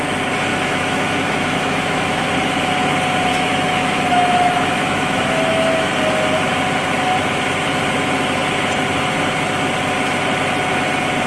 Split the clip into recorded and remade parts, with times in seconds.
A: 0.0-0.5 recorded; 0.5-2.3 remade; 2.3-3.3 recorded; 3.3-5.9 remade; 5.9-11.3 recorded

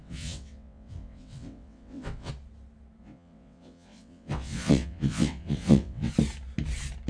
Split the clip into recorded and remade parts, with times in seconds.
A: 0.0-2.3 remade; 2.3-3.0 recorded; 3.0-6.1 remade; 6.1-7.1 recorded

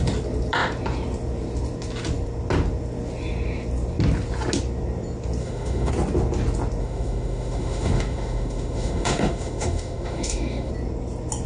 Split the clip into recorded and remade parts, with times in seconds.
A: 0.0-5.4 recorded; 5.4-5.9 remade; 5.9-6.8 recorded; 6.8-10.7 remade; 10.7-11.5 recorded

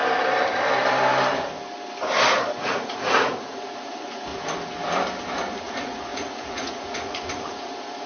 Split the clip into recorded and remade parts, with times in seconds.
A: 0.0-2.6 recorded; 2.6-4.3 remade; 4.3-5.6 recorded; 5.6-8.1 remade